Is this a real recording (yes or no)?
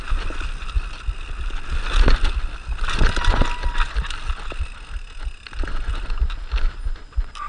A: yes